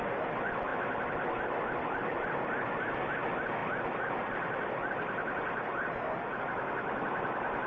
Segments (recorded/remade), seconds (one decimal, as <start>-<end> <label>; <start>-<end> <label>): 0.0-7.7 recorded